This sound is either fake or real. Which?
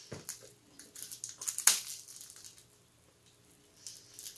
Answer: real